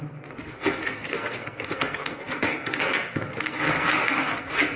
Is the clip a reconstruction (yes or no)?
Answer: yes